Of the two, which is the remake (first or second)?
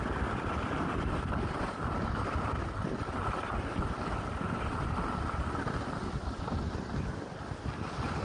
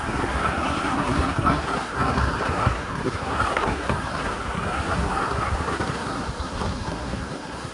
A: second